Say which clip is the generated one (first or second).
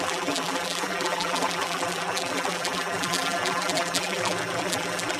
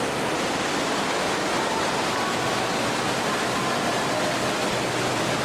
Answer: first